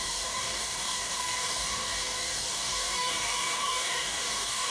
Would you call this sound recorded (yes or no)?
no